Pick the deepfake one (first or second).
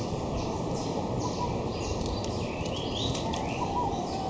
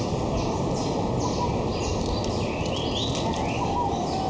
first